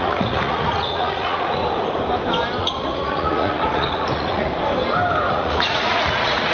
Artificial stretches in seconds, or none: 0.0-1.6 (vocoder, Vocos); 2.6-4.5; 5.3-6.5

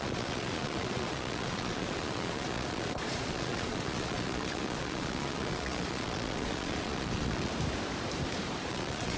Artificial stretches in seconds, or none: 0.0-7.5 (vocoder, Vocos); 8.7-9.2

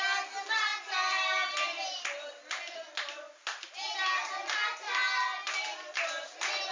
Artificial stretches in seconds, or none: none

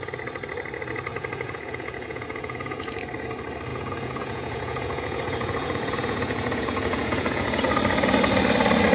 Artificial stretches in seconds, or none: 1.1-3.0 (vocoder, Vocos); 3.7-7.7

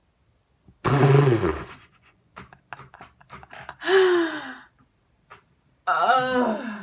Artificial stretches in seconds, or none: 1.5-2.4 (vocoder, Vocos)

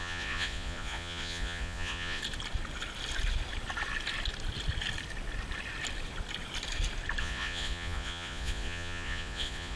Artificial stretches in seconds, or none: 0.0-2.2 (vocoder, Vocos); 7.2-9.8